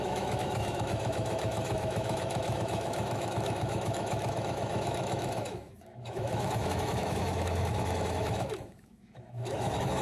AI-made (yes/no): yes